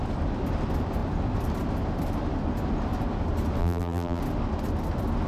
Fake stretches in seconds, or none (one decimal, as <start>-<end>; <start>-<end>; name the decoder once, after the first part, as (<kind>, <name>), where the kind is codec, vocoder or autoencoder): 3.6-4.2 (vocoder, BigVGAN v2)